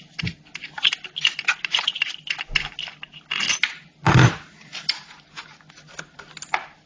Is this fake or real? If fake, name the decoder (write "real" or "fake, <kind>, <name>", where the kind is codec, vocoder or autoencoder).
real